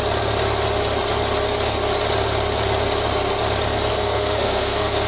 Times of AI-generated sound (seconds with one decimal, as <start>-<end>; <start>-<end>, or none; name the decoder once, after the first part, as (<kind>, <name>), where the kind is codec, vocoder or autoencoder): 3.9-5.1 (codec, SNAC)